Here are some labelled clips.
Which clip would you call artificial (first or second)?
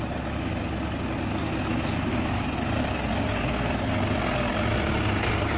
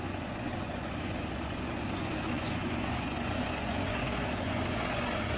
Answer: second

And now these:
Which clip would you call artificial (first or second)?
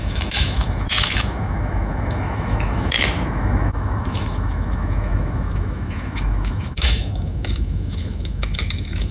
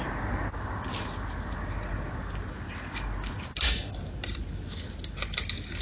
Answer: first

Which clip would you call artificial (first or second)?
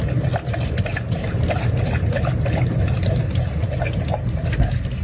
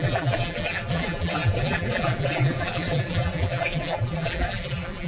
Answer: second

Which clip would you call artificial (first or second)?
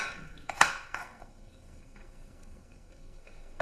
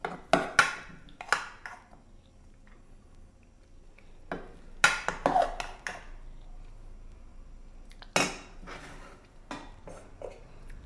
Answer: first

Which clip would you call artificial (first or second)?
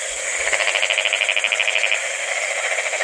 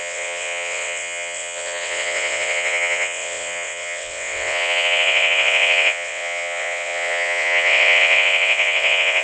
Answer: second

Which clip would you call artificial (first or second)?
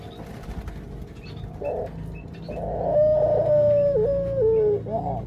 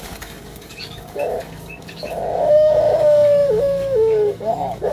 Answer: second